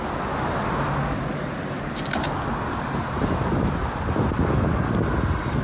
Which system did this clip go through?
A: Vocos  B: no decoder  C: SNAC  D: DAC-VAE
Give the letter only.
B